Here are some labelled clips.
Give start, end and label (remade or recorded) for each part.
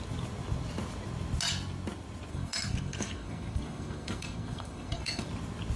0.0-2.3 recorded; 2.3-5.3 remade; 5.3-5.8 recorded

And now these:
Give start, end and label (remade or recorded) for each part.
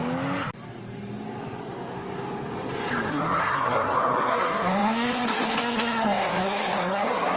0.0-3.1 recorded; 3.1-7.4 remade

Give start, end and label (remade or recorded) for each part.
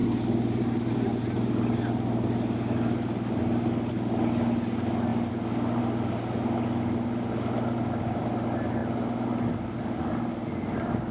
0.0-11.1 recorded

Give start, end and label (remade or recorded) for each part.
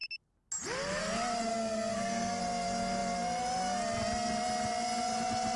0.0-1.5 recorded; 1.5-2.4 remade; 2.4-5.6 recorded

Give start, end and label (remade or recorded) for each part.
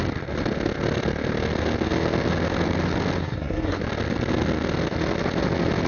0.0-3.2 recorded; 3.2-3.8 remade; 3.8-5.9 recorded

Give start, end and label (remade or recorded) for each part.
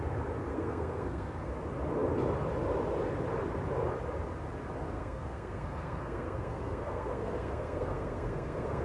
0.0-0.5 recorded; 0.5-1.5 remade; 1.5-4.9 recorded; 4.9-8.8 remade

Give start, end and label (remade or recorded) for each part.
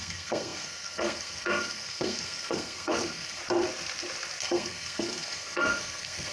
0.0-3.4 remade; 3.4-4.4 recorded; 4.4-6.3 remade